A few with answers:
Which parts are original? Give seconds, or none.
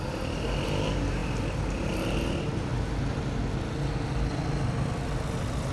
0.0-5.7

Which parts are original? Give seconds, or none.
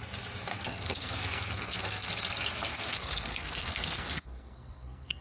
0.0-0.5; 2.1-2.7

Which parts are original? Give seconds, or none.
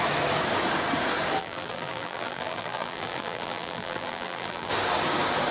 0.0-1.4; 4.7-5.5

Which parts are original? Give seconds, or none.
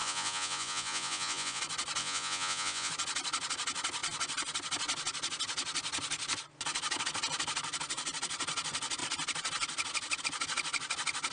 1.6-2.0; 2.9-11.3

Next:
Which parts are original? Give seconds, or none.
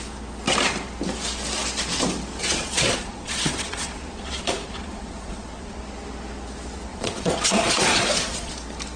0.0-2.4; 5.8-6.9; 8.5-9.0